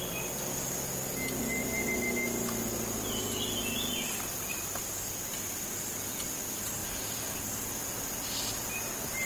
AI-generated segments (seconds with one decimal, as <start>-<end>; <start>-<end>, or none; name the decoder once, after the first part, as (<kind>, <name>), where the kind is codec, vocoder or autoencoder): 6.8-7.4 (vocoder, BigVGAN v2)